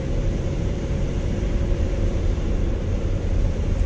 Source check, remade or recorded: remade